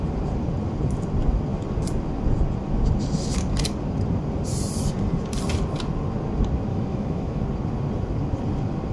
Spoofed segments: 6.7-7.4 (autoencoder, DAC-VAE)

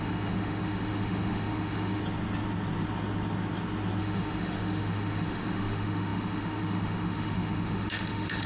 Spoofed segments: 0.0-2.0 (autoencoder, DAC-VAE); 4.0-8.5

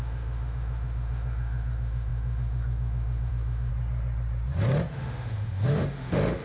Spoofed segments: 0.0-3.7 (autoencoder, DAC-VAE); 4.9-6.4

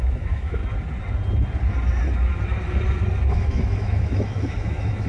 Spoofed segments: 0.0-0.6 (autoencoder, DAC-VAE); 3.3-5.1